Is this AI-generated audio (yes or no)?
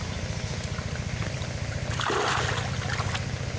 no